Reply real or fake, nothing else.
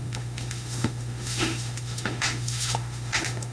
fake